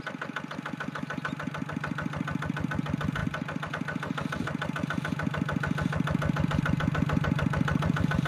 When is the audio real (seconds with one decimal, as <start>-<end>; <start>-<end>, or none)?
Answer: 0.0-8.3